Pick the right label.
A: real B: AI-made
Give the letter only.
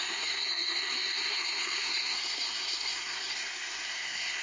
B